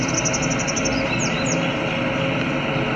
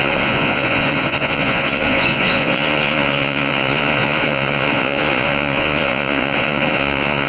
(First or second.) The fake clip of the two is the second